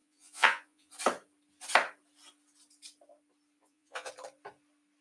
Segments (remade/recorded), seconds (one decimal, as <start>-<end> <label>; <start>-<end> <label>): 0.0-0.9 remade; 0.9-3.6 recorded; 3.6-4.1 remade; 4.1-5.0 recorded